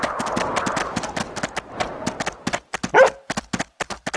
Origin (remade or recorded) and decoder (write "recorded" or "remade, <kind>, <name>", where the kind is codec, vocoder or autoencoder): recorded